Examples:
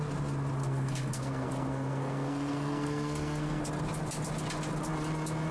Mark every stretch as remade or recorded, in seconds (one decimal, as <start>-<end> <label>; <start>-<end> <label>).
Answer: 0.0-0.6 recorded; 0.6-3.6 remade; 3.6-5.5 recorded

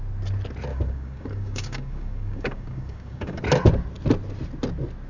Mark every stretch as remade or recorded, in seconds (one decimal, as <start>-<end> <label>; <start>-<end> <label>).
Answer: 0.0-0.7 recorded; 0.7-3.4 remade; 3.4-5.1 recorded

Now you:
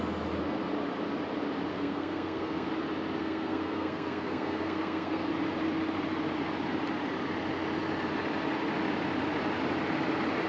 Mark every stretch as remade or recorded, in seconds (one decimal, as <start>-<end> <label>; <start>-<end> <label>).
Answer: 0.0-1.7 recorded; 1.7-2.7 remade; 2.7-3.2 recorded; 3.2-5.3 remade; 5.3-10.5 recorded